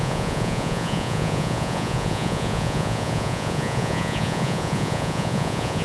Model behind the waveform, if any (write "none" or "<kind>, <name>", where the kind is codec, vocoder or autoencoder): vocoder, Vocos